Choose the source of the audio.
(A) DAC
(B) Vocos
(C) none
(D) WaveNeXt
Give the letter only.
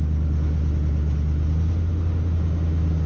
C